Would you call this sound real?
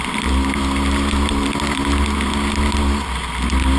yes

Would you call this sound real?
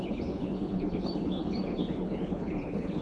no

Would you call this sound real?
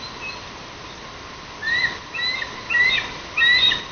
yes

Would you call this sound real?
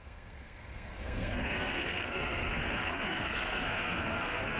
no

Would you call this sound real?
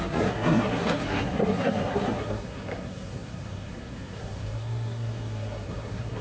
no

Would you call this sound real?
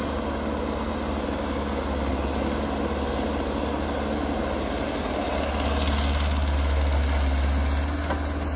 yes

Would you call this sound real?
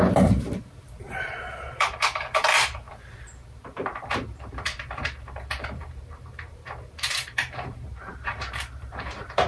no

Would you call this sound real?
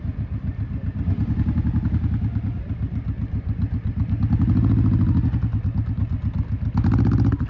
yes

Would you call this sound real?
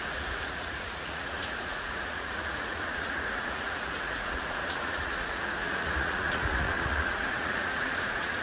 no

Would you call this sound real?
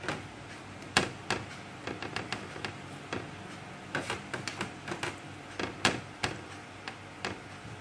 yes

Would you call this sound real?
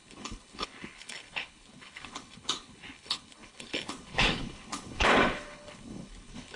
no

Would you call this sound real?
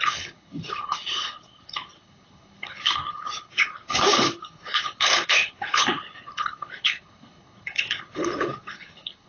no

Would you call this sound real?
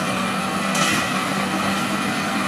no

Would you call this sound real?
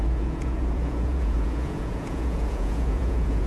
no